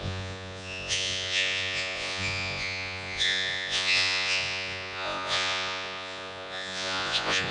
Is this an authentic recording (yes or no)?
no